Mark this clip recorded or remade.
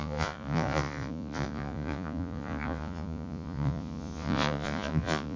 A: remade